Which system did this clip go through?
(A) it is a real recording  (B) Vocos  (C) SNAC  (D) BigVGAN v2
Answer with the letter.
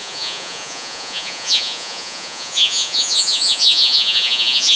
B